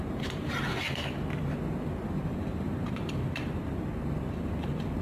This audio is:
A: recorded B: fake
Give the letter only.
B